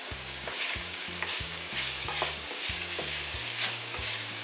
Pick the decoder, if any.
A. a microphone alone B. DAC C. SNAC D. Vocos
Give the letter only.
B